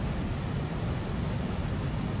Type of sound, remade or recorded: recorded